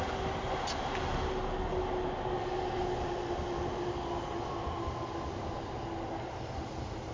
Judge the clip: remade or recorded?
recorded